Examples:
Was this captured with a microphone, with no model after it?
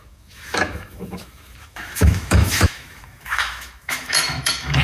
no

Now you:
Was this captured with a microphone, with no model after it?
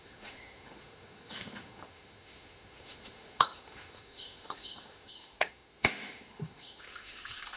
no